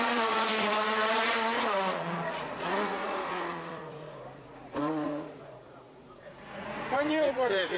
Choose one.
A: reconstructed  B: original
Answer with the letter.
A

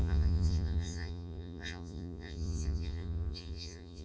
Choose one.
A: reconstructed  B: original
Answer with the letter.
A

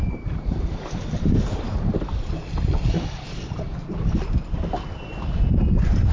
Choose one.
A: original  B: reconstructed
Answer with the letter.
A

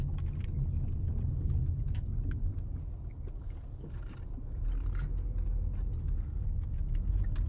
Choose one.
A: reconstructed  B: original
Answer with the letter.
B